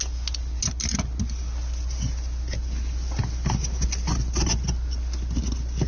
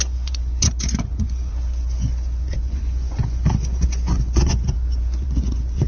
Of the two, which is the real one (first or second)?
first